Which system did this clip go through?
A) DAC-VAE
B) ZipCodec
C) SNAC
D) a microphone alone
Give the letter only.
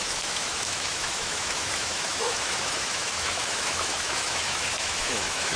A